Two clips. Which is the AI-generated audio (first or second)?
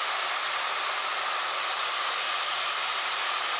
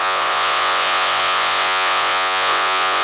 second